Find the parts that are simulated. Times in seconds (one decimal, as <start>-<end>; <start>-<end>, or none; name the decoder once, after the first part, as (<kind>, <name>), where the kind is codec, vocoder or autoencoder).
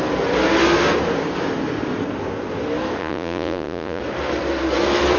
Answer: 3.0-4.0 (vocoder, Vocos)